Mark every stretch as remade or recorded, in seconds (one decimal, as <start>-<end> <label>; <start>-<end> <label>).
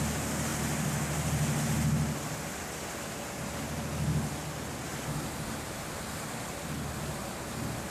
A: 0.0-7.9 recorded